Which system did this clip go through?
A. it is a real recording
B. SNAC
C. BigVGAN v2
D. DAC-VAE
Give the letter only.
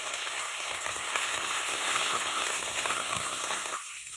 B